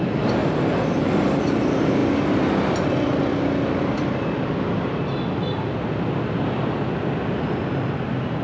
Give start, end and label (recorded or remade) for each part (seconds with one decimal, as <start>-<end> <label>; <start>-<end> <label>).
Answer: 0.0-8.4 recorded